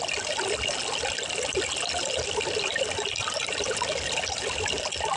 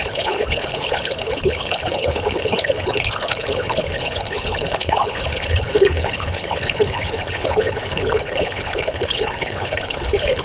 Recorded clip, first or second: first